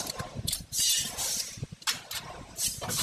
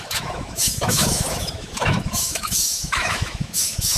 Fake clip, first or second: second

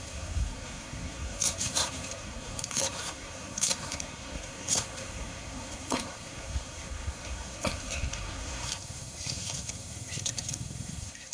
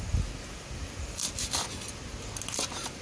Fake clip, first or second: first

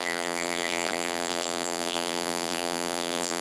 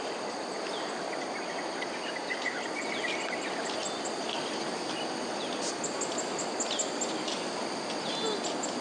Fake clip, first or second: first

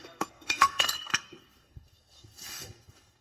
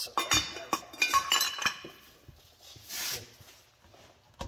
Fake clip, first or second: first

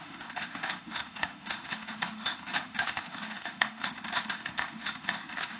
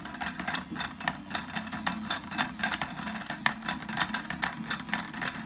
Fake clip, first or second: first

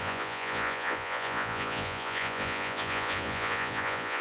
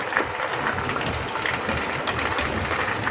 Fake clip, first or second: first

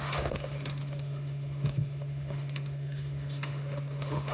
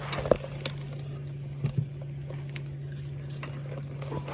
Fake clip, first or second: first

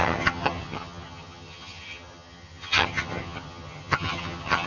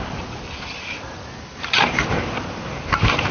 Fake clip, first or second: first